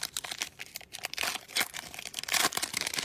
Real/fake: real